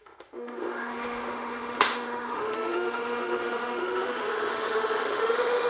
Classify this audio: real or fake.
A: fake